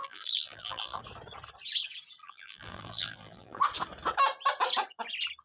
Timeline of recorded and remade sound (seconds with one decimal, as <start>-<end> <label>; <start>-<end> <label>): 0.0-1.0 remade; 1.0-2.2 recorded; 2.2-3.6 remade; 3.6-5.4 recorded